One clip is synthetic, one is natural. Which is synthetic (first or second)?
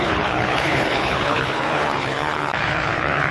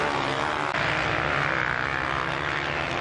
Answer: first